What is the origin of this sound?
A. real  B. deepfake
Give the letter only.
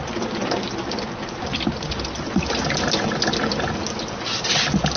A